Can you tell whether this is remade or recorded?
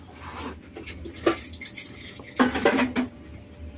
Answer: recorded